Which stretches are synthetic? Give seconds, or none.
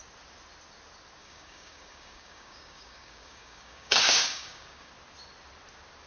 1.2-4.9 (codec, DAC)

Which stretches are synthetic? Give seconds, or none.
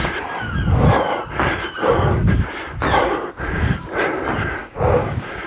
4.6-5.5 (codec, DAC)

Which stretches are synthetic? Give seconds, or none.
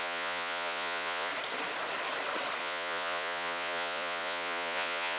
0.0-1.3 (vocoder, Vocos); 2.6-5.2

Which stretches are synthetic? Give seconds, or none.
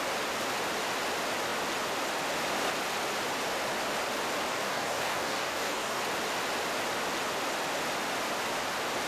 4.5-6.0 (codec, DAC)